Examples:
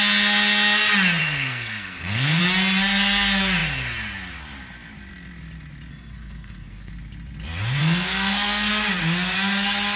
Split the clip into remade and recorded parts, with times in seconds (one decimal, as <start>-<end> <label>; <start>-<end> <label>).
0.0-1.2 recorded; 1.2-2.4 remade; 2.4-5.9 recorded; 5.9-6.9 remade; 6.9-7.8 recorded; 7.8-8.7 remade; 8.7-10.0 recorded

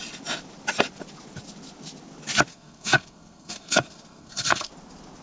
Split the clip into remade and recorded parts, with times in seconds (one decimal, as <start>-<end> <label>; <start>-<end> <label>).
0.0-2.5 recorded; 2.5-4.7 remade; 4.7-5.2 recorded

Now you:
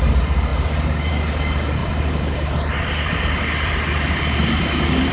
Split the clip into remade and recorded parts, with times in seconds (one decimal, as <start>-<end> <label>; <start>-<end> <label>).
0.0-1.8 recorded; 1.8-5.1 remade

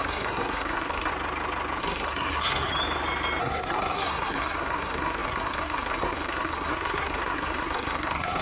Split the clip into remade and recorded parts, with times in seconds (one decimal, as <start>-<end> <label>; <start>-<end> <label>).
0.0-1.1 remade; 1.1-1.8 recorded; 1.8-2.7 remade; 2.7-3.4 recorded; 3.4-8.4 remade

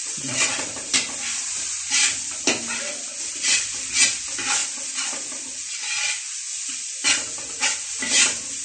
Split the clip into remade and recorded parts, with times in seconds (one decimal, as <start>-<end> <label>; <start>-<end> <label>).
0.0-0.7 remade; 0.7-8.6 recorded

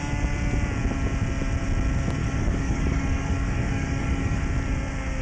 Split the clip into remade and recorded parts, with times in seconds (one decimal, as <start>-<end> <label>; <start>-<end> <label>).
0.0-2.2 recorded; 2.2-4.4 remade; 4.4-5.2 recorded

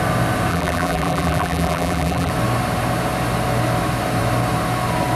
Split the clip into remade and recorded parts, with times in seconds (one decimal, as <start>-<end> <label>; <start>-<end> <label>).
0.0-0.5 recorded; 0.5-2.3 remade; 2.3-5.2 recorded